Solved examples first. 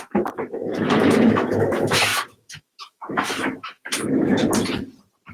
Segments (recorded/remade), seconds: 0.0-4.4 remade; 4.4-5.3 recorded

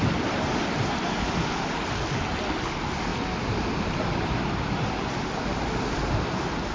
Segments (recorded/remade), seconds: 0.0-6.7 recorded

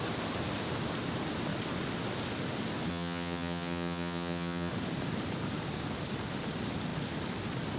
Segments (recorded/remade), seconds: 0.0-2.9 recorded; 2.9-4.7 remade; 4.7-7.8 recorded